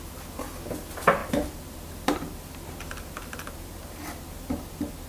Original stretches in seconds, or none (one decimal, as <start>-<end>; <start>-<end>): 0.0-1.2; 4.3-5.1